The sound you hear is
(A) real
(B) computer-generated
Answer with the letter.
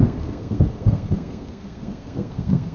B